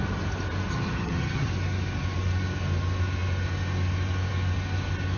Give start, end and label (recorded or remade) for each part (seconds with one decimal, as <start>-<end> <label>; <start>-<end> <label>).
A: 0.0-0.7 recorded; 0.7-1.5 remade; 1.5-5.2 recorded